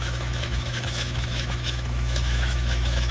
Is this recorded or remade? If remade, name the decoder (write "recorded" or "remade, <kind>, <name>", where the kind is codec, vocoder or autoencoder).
remade, autoencoder, DAC-VAE